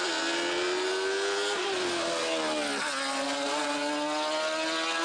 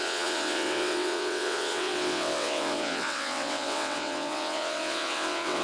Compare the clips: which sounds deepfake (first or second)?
second